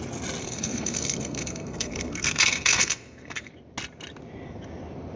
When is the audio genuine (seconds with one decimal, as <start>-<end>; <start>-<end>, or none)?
0.0-0.4; 3.5-5.2